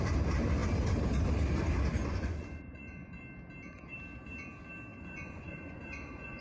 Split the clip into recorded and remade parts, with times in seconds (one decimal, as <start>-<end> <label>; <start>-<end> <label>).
0.0-2.0 recorded; 2.0-3.2 remade; 3.2-4.9 recorded; 4.9-6.4 remade